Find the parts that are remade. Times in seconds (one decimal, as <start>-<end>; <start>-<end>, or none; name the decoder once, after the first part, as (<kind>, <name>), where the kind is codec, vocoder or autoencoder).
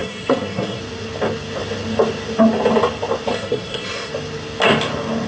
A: 0.0-0.8 (codec, SNAC); 3.3-4.1